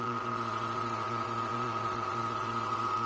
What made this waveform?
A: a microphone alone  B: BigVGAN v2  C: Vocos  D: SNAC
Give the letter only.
C